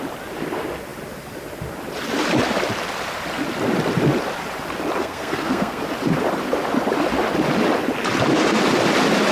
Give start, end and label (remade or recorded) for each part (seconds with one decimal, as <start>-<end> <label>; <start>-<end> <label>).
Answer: 0.0-5.0 recorded; 5.0-5.8 remade; 5.8-9.3 recorded